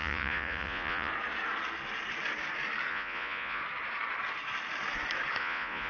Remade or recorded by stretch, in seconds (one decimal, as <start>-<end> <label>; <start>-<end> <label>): 0.0-1.1 remade; 1.1-2.9 recorded; 2.9-3.6 remade; 3.6-5.4 recorded; 5.4-5.9 remade